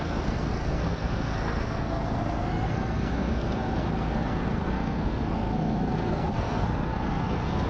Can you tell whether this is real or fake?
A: fake